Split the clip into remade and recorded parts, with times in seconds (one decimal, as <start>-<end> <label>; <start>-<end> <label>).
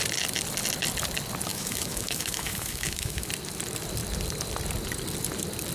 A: 0.0-1.5 recorded; 1.5-3.3 remade; 3.3-5.7 recorded